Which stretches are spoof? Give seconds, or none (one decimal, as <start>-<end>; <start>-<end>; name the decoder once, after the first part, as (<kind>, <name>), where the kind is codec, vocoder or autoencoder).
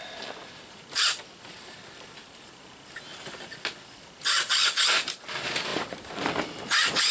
0.4-2.5 (vocoder, BigVGAN v2); 5.7-6.6